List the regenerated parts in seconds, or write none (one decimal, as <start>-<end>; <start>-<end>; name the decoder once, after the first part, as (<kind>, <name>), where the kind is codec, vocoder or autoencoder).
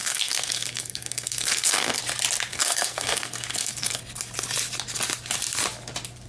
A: 0.0-2.0 (codec, SNAC); 2.5-4.0